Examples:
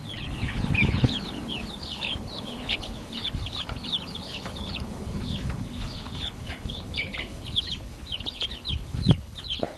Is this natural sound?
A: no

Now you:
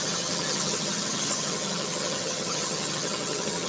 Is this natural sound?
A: no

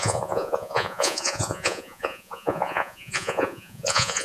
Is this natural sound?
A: no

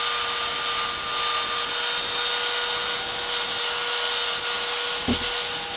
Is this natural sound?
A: yes